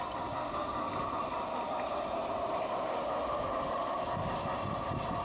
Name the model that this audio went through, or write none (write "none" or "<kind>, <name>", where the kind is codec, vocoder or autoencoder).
none